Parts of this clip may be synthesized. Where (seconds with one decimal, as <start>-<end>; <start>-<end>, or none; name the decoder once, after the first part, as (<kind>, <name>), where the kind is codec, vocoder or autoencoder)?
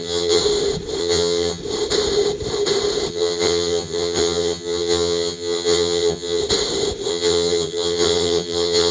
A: 0.0-0.4 (vocoder, HiFi-GAN); 1.0-1.6; 3.1-6.4; 7.1-8.9